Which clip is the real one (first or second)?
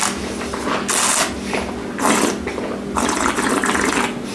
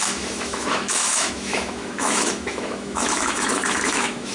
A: first